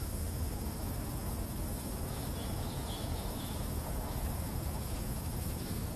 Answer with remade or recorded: remade